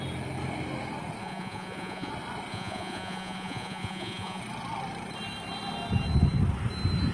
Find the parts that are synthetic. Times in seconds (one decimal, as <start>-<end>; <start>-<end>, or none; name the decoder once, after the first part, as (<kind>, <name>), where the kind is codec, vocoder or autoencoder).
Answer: 1.2-2.1 (vocoder, Vocos); 2.5-4.4